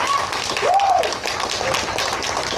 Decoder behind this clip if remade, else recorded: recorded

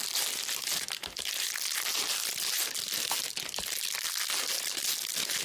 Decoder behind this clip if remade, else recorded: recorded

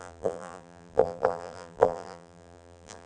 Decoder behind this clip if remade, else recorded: remade, vocoder, BigVGAN v2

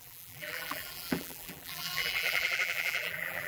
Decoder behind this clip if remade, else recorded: remade, vocoder, BigVGAN v2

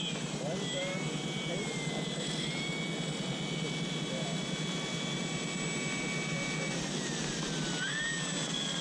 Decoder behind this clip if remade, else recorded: recorded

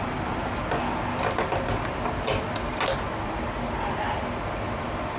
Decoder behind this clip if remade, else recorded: recorded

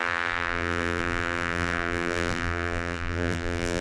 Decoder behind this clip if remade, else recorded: remade, vocoder, BigVGAN v2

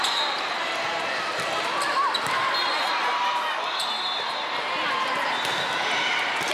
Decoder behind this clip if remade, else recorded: recorded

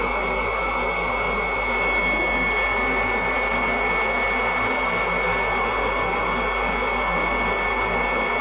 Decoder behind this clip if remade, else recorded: recorded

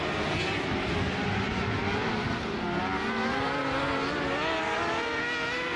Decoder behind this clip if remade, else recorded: recorded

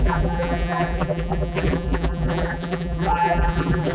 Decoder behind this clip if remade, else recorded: remade, vocoder, BigVGAN v2